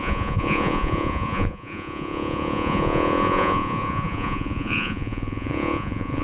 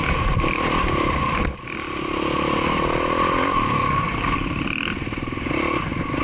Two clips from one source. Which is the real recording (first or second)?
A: second